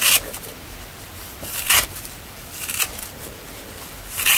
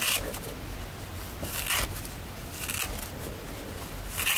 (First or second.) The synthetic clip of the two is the first